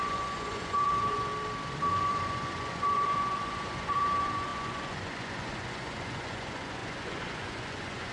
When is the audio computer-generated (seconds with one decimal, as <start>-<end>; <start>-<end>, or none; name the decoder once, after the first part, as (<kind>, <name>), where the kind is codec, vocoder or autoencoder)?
0.0-1.3 (vocoder, Vocos); 1.9-8.1